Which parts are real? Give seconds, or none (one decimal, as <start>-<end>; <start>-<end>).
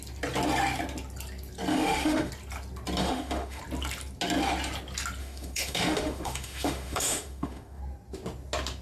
0.0-1.7; 2.3-3.0; 3.6-5.2; 7.8-8.8